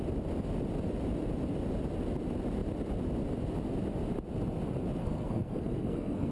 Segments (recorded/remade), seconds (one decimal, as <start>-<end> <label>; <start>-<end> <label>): 0.0-5.0 recorded; 5.0-6.3 remade